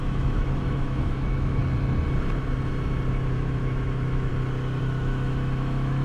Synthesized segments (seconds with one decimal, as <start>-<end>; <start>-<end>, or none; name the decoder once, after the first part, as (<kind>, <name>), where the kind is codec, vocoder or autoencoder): 0.0-1.6 (autoencoder, DAC-VAE); 3.1-4.3; 4.8-6.0